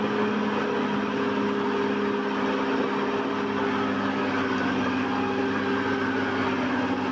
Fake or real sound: real